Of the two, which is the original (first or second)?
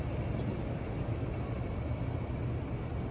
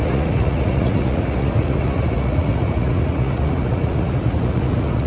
first